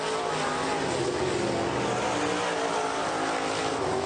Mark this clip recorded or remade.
recorded